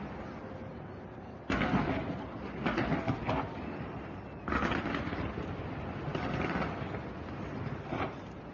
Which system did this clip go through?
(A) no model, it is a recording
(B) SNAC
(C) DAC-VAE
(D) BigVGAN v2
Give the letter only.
A